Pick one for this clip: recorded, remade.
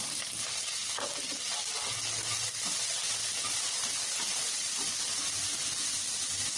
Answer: recorded